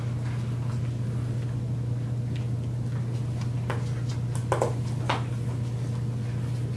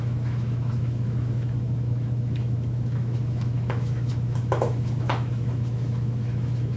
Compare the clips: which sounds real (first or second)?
first